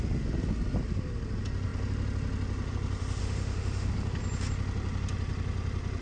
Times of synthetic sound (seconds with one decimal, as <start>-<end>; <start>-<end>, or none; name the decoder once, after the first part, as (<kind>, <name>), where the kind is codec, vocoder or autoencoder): 3.2-3.9 (autoencoder, DAC-VAE)